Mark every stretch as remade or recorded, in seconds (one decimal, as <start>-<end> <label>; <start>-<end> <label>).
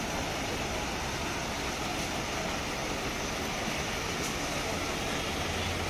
0.0-5.9 recorded